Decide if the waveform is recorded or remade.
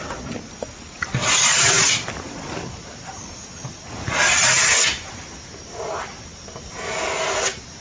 recorded